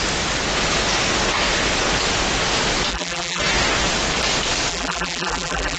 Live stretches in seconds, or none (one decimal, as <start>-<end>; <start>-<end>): 0.0-2.9; 3.4-4.7